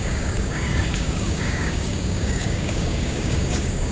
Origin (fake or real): fake